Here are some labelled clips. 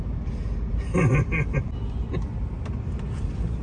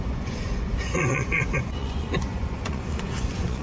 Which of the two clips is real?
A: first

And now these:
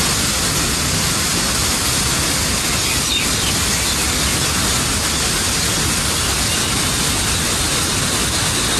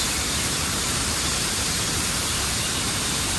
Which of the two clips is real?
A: first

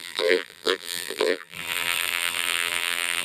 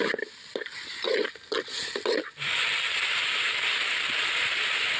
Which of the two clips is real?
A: second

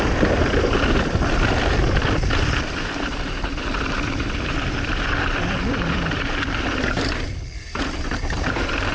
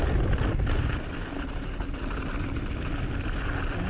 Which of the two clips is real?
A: second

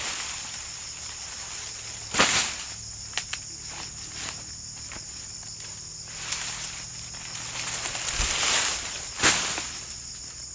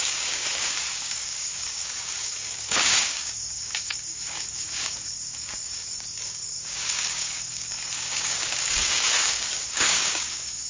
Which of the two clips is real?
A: first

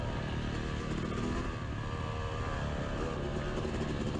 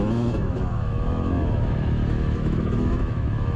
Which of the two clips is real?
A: first